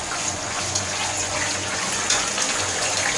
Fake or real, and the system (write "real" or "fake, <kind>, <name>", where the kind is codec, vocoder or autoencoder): fake, vocoder, Vocos